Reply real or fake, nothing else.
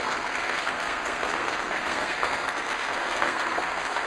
fake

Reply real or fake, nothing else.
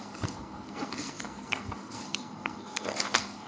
fake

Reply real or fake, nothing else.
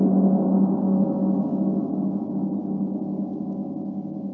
real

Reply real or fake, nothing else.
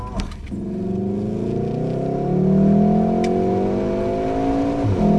real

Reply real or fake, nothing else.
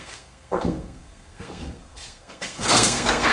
fake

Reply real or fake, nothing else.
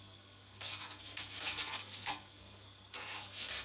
fake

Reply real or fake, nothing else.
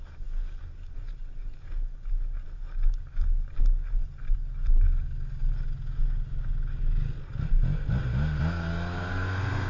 real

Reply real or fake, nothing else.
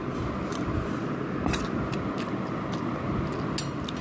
real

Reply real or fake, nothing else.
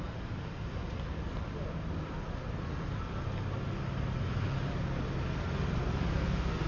real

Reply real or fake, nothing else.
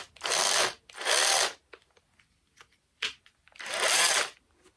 real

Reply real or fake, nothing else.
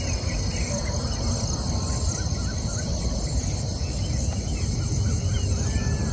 real